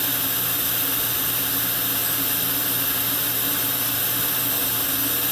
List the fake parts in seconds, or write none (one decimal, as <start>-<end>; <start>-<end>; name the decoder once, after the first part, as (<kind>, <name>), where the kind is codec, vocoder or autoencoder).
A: none